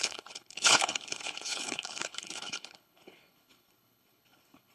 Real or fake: fake